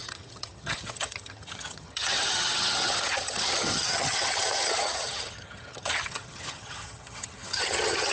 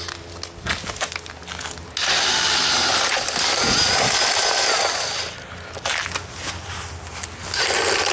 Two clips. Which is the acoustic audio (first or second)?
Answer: second